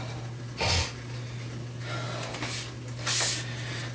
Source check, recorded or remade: recorded